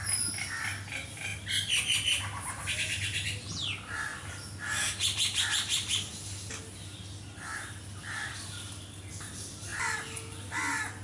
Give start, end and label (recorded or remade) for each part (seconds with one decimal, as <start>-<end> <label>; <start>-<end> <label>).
0.0-9.7 recorded; 9.7-10.5 remade; 10.5-11.0 recorded